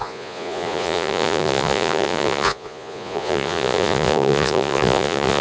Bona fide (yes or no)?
no